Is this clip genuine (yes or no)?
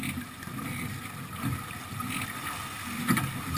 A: yes